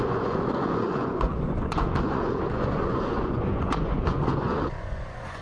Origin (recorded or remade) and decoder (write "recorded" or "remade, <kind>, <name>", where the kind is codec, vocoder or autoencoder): remade, vocoder, Vocos